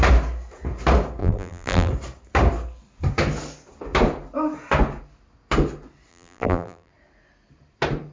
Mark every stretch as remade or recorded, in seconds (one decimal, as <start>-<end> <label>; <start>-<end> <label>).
0.0-1.2 recorded; 1.2-1.9 remade; 1.9-6.1 recorded; 6.1-6.9 remade; 6.9-8.1 recorded